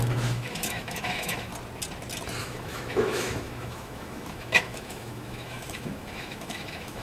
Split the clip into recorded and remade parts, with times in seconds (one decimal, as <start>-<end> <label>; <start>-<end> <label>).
0.0-1.5 remade; 1.5-2.4 recorded; 2.4-7.0 remade